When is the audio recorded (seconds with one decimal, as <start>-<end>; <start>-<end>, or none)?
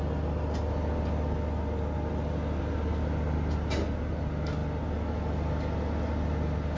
0.0-6.8